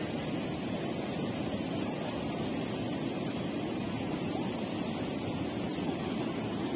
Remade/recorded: recorded